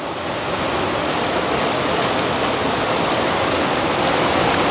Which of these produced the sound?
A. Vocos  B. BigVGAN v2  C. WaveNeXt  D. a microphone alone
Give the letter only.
D